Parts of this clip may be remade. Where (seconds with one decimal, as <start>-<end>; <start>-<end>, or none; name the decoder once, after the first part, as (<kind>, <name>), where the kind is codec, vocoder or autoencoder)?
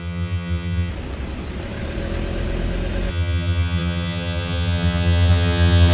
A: 0.0-0.9 (vocoder, HiFi-GAN); 3.1-5.9